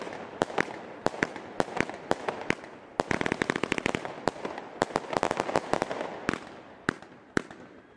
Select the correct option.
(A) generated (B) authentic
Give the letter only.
B